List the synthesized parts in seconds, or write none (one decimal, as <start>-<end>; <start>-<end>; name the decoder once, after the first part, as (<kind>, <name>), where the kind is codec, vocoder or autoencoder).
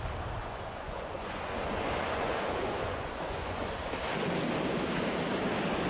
0.4-3.9 (vocoder, Vocos)